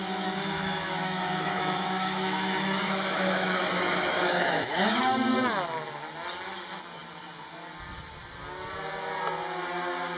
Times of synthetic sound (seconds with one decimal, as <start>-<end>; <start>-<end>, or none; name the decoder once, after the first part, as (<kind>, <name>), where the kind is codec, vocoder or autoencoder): 0.0-5.0 (autoencoder, DAC-VAE)